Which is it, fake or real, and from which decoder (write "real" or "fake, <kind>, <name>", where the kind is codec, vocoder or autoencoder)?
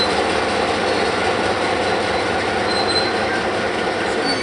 real